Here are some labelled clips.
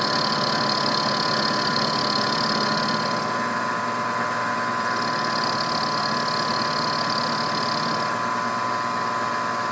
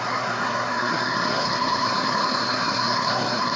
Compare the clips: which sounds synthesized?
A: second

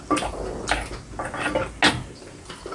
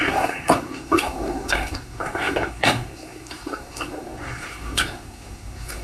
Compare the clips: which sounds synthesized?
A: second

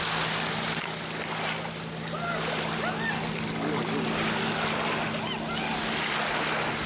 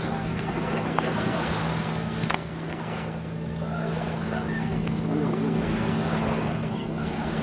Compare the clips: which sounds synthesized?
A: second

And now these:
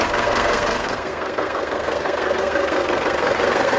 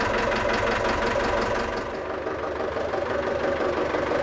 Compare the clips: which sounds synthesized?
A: first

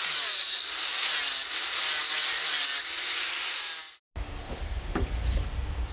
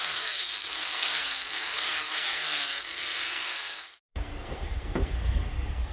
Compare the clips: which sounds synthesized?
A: second